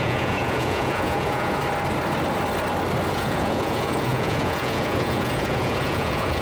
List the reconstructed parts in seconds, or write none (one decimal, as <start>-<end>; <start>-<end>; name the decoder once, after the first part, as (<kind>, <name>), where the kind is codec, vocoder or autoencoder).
0.0-1.6 (vocoder, Vocos); 3.1-6.4